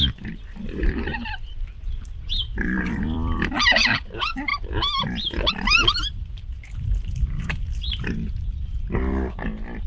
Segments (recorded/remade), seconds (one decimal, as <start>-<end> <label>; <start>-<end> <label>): 0.0-4.5 remade; 4.5-5.5 recorded; 5.5-9.9 remade